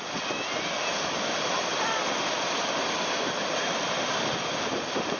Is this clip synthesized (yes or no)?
no